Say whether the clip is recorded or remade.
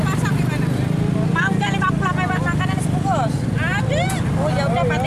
recorded